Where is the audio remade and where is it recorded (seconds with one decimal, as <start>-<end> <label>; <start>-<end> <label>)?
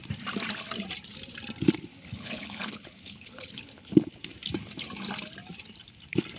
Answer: 0.0-1.9 recorded; 1.9-3.9 remade; 3.9-6.4 recorded